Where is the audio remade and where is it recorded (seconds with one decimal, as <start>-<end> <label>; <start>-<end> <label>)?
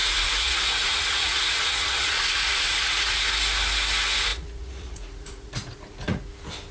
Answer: 0.0-3.2 remade; 3.2-4.3 recorded; 4.3-6.3 remade; 6.3-6.7 recorded